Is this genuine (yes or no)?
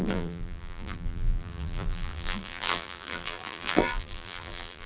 no